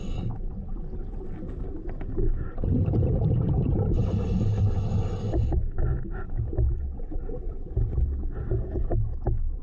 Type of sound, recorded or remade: recorded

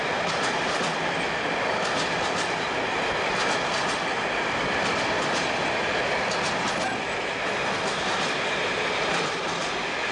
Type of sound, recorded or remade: recorded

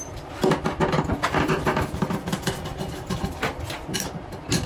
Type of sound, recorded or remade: recorded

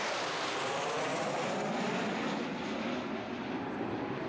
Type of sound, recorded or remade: recorded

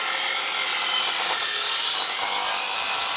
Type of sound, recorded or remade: remade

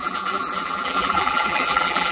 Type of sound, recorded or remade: remade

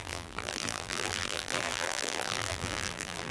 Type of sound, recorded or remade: remade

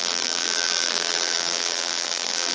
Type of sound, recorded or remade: remade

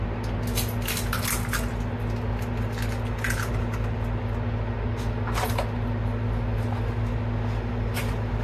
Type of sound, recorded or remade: recorded